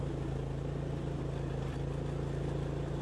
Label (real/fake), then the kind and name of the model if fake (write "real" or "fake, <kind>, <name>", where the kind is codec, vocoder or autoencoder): real